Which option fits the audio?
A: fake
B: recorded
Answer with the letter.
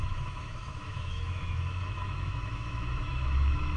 A